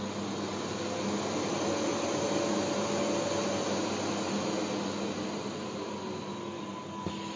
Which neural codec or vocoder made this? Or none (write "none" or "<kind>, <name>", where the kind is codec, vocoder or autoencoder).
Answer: none